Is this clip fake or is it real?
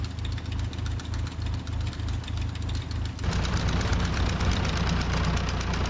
real